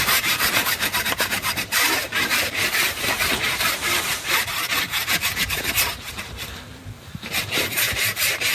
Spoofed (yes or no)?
yes